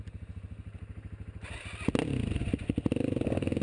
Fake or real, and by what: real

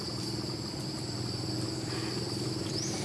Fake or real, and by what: real